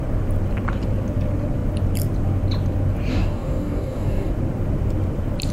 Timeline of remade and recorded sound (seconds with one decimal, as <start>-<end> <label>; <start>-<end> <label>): 0.0-3.1 recorded; 3.1-4.3 remade; 4.3-5.5 recorded